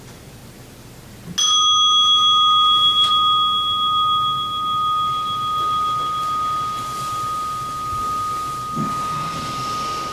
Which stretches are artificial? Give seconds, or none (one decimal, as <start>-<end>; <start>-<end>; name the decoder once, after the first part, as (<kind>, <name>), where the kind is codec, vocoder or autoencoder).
none